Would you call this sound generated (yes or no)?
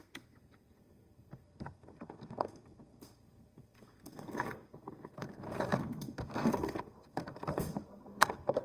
yes